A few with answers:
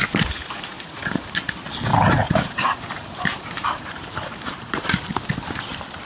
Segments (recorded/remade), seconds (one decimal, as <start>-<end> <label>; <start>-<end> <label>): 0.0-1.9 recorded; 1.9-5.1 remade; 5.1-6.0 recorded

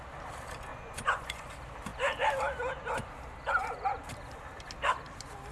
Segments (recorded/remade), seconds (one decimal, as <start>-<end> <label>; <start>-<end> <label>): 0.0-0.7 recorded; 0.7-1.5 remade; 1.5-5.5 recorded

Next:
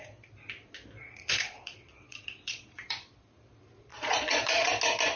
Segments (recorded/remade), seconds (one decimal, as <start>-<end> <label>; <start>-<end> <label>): 0.0-1.0 recorded; 1.0-3.1 remade; 3.1-3.9 recorded; 3.9-4.7 remade; 4.7-5.2 recorded